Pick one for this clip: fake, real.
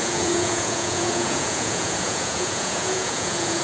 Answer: fake